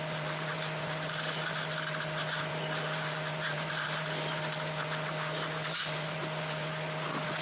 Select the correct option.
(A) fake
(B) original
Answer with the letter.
B